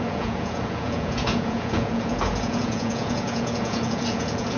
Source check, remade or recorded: remade